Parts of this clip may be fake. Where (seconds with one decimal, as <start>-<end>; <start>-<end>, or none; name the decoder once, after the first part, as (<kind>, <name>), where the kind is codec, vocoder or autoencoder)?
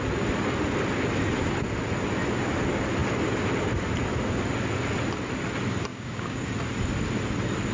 5.9-6.5 (codec, DAC)